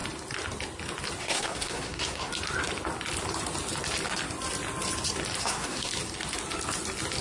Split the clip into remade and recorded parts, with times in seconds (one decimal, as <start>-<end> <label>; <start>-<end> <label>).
0.0-1.2 recorded; 1.2-2.3 remade; 2.3-5.4 recorded; 5.4-5.9 remade; 5.9-7.2 recorded